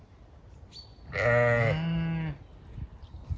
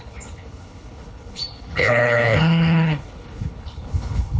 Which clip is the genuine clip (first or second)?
first